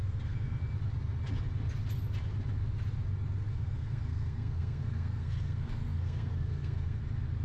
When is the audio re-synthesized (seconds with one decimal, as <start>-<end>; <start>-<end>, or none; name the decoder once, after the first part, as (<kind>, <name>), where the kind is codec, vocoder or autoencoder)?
0.0-0.6 (codec, SNAC); 3.5-7.0